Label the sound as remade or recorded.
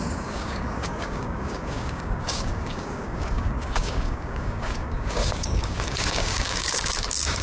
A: remade